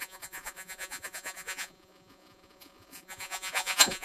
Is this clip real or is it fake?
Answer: fake